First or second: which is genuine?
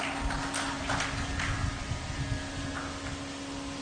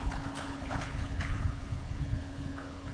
first